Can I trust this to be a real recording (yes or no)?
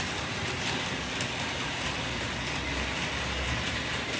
yes